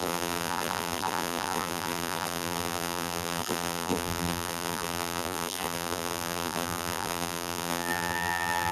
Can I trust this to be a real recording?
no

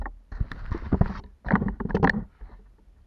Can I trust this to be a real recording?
yes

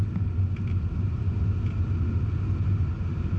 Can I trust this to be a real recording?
yes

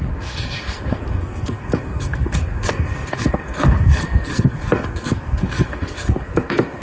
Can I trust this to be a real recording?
no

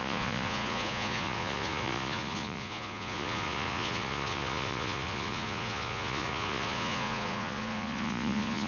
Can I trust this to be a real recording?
no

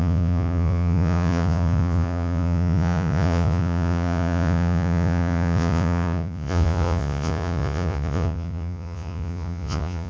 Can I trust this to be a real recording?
no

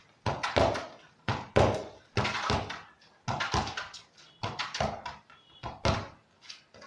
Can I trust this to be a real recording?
yes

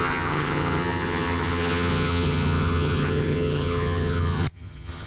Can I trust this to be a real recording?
no